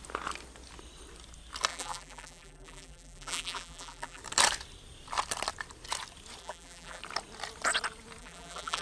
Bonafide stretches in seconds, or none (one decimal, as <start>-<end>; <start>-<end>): 0.0-1.7; 4.2-6.4; 7.0-8.2